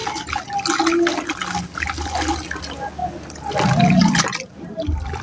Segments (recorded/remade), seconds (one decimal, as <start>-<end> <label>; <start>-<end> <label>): 0.0-5.2 recorded